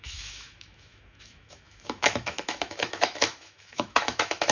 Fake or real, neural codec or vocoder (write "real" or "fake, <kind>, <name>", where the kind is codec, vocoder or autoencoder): fake, autoencoder, DAC-VAE